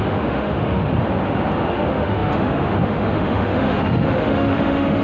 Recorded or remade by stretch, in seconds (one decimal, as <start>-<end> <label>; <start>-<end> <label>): 0.0-0.9 remade; 0.9-1.7 recorded; 1.7-5.0 remade